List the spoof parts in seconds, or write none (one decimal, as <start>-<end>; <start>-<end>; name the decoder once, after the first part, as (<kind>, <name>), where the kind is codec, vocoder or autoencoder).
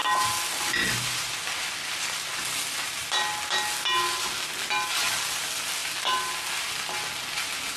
none